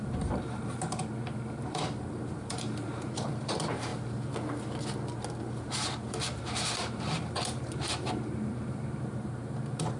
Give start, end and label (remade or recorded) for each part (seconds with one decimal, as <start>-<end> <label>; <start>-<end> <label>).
0.0-3.9 remade; 3.9-5.4 recorded; 5.4-10.0 remade